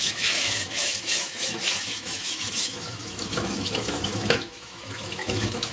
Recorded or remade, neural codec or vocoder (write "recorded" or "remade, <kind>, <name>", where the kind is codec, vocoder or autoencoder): remade, autoencoder, DAC-VAE